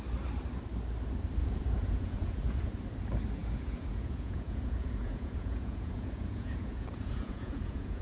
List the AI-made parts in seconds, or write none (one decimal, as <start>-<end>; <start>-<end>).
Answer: 1.4-2.7; 3.4-8.0